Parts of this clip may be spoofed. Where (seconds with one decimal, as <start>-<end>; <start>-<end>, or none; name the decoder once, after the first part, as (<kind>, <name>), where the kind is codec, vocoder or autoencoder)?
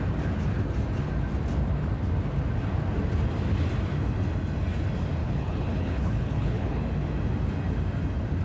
5.2-6.8 (codec, HILCodec)